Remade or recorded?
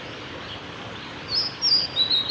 recorded